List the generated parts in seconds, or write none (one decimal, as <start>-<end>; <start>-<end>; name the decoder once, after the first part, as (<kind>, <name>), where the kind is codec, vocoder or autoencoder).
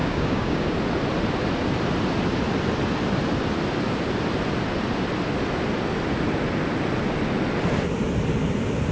0.0-0.8 (codec, DAC)